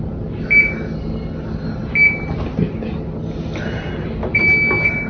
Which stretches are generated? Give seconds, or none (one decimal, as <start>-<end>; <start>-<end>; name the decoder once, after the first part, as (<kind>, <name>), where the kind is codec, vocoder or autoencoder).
none